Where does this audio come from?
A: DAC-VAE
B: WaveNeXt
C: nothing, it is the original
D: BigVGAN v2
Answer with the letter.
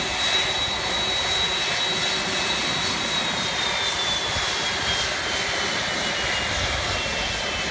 C